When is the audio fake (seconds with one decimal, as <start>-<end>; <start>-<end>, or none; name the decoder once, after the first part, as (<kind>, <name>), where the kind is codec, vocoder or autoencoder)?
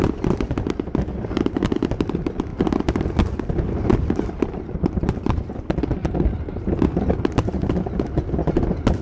none